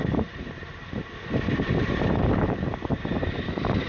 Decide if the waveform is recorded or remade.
remade